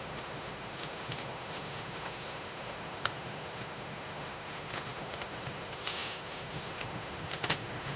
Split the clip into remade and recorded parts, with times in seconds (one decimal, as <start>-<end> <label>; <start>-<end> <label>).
0.0-8.0 remade